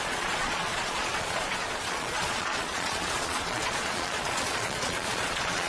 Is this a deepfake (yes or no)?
yes